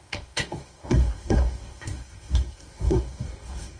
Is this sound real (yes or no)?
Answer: no